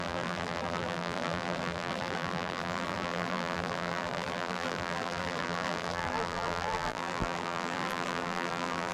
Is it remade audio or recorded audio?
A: remade